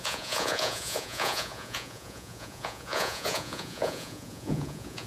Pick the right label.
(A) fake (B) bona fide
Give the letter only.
A